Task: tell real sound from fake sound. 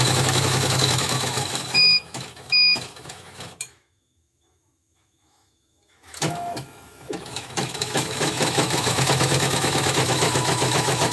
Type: fake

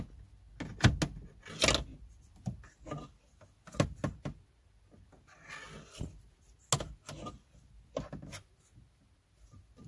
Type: real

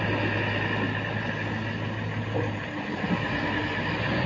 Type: real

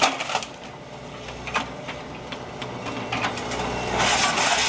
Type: real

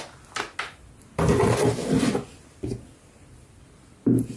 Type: real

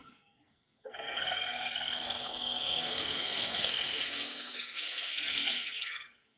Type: fake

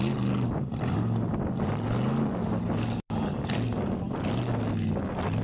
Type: real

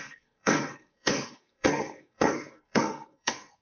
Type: fake